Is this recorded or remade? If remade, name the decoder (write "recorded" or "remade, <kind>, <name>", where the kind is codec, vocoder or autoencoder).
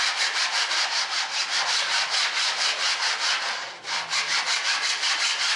recorded